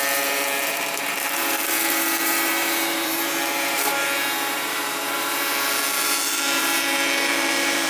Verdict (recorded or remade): remade